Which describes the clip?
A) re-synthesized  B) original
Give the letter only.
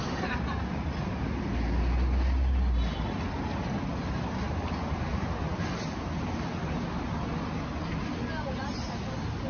B